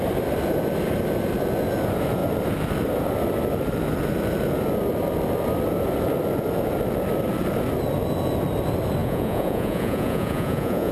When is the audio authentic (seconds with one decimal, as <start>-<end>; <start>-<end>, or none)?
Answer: 0.0-9.0